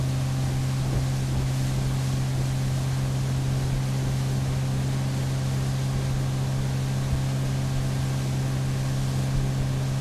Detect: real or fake real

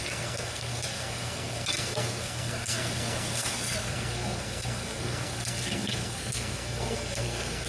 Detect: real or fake fake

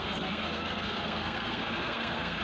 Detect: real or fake fake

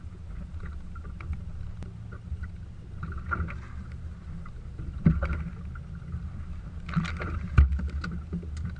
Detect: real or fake real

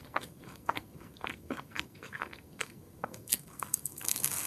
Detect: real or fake fake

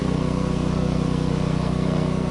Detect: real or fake fake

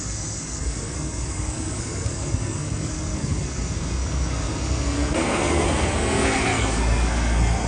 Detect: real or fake fake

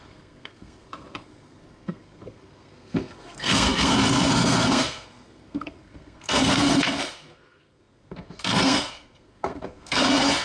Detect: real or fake fake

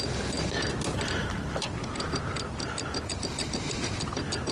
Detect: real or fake real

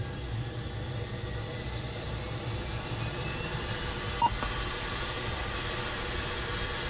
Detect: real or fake real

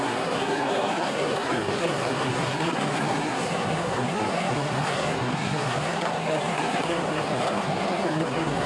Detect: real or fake fake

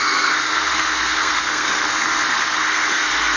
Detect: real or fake fake